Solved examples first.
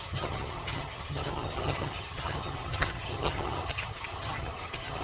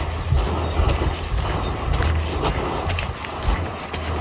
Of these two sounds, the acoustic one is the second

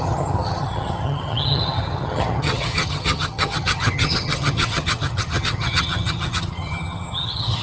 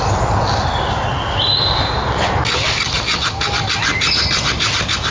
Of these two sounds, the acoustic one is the second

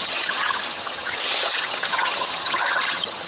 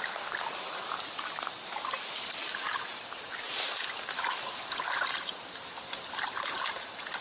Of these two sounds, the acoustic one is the second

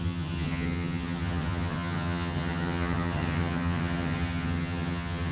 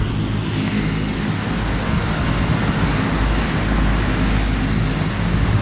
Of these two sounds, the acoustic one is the second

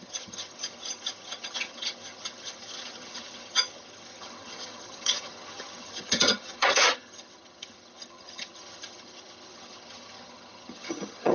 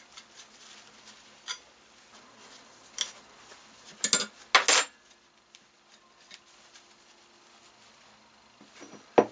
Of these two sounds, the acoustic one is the second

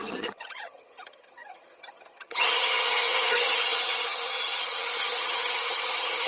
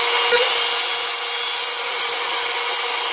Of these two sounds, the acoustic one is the second